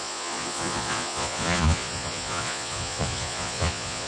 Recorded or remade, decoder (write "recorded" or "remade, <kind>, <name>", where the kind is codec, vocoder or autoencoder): remade, vocoder, Vocos